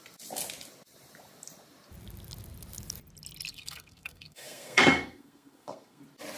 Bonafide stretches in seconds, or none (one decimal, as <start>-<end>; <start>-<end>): 0.0-3.5; 6.0-6.4